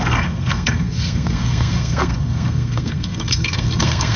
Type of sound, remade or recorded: remade